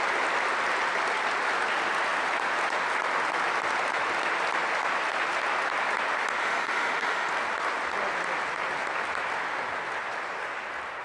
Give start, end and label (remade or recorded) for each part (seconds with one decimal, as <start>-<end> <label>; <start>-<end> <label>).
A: 0.0-6.4 recorded; 6.4-7.3 remade; 7.3-11.0 recorded